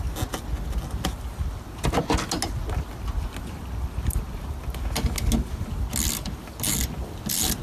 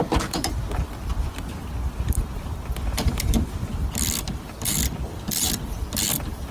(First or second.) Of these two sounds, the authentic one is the first